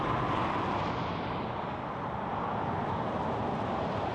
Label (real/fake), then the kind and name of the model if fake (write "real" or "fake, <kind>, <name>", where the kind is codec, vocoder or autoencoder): real